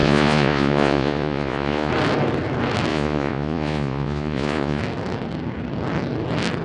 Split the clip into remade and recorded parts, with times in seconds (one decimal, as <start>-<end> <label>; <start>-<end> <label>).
0.0-1.9 remade; 1.9-2.9 recorded; 2.9-4.8 remade; 4.8-6.6 recorded